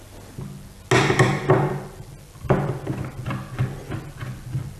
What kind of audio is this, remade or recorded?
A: recorded